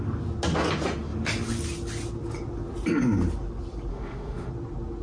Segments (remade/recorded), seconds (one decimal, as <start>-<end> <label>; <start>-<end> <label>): 0.0-3.9 recorded; 3.9-4.5 remade; 4.5-5.0 recorded